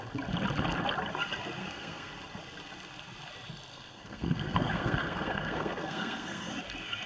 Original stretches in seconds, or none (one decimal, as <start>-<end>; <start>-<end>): 0.0-1.6; 2.1-3.7; 6.5-7.1